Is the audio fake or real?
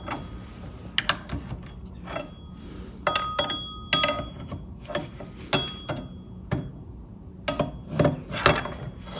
real